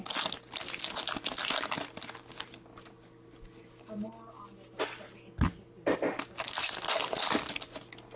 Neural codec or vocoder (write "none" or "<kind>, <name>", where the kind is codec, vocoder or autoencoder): none